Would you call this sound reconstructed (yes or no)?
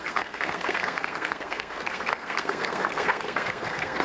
yes